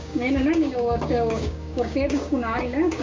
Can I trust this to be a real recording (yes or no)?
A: no